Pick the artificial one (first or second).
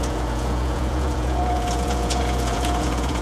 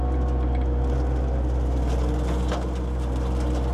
first